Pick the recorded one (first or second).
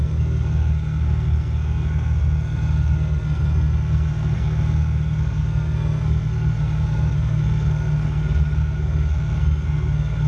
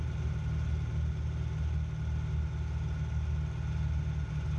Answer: second